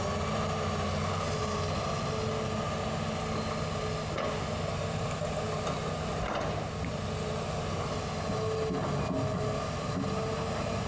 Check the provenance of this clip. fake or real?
real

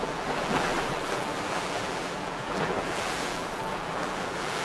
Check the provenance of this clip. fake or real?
fake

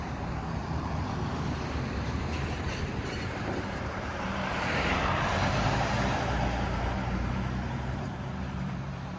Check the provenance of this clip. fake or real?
fake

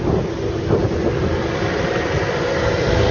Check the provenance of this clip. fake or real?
real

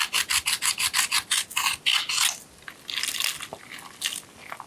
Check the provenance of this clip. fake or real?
real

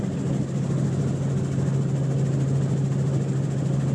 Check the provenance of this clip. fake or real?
real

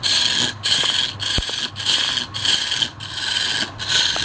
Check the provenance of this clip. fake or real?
real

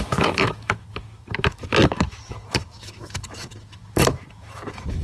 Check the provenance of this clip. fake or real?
fake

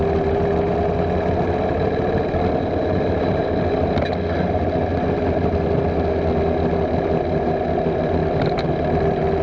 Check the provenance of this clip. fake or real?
real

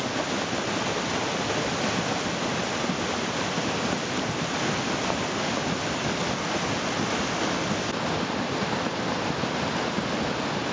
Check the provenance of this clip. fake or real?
real